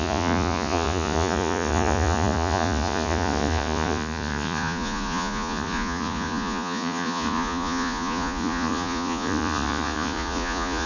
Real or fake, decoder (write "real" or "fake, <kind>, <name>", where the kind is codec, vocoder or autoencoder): fake, vocoder, Vocos